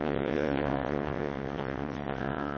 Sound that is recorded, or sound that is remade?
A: remade